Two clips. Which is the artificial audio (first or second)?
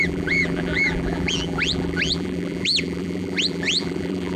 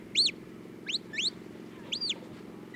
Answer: first